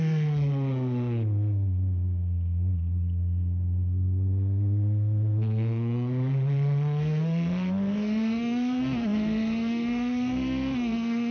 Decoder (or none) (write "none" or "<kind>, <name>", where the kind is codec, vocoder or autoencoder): codec, SNAC